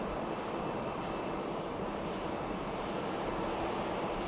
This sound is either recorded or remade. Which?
remade